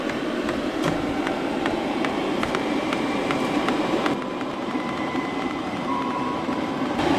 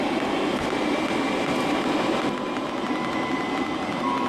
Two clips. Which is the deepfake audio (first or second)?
first